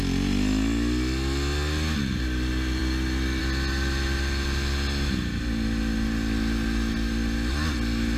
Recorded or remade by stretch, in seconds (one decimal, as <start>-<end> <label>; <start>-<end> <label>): 0.0-8.2 recorded